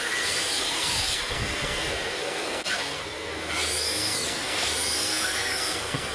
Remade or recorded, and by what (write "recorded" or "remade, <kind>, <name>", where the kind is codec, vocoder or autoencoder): remade, codec, SNAC